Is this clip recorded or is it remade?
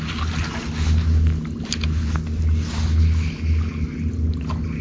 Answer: recorded